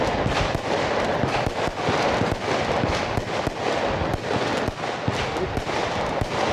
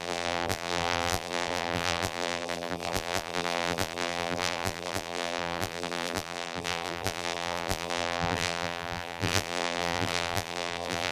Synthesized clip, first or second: second